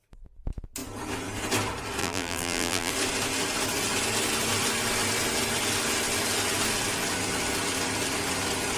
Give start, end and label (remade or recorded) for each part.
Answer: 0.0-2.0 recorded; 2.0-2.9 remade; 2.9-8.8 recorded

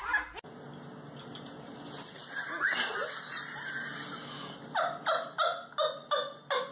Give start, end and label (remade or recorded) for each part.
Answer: 0.0-6.7 recorded

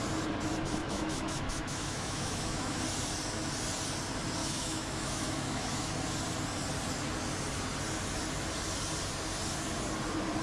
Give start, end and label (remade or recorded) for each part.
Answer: 0.0-0.8 recorded; 0.8-2.8 remade; 2.8-4.4 recorded; 4.4-5.9 remade; 5.9-10.4 recorded

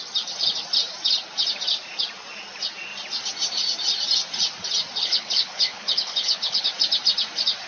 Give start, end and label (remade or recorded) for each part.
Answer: 0.0-5.0 recorded; 5.0-6.7 remade; 6.7-7.7 recorded

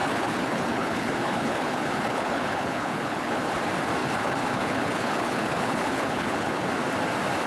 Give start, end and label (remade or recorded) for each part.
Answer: 0.0-3.5 remade; 3.5-4.0 recorded; 4.0-6.6 remade; 6.6-7.5 recorded